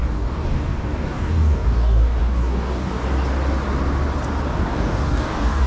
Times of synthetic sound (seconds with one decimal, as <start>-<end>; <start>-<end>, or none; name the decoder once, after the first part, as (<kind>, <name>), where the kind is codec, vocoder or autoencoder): 0.0-3.0 (codec, DAC); 4.6-5.7